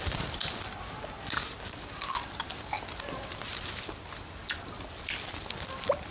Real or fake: real